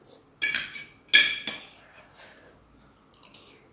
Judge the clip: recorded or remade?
recorded